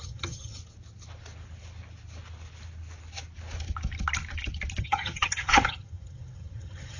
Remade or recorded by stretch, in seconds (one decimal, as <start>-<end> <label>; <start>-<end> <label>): 0.0-0.6 remade; 0.6-4.8 recorded; 4.8-7.0 remade

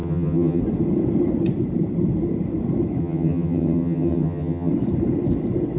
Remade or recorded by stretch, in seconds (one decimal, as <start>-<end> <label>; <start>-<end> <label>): 0.0-0.6 remade; 0.6-3.0 recorded; 3.0-4.7 remade; 4.7-5.8 recorded